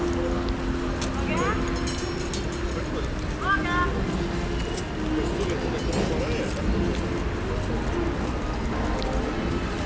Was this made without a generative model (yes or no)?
yes